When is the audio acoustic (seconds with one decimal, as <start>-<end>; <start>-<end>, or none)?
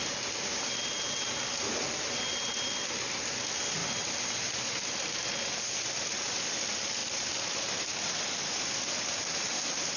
0.0-2.3; 3.0-3.8; 5.6-7.0; 8.0-10.0